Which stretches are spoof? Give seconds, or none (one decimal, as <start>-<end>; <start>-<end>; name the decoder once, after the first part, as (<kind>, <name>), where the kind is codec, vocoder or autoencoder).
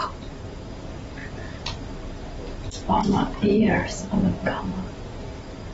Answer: 1.2-1.8 (vocoder, BigVGAN v2); 3.0-4.1